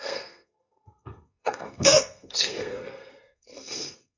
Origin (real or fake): fake